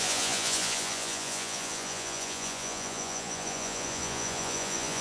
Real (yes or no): no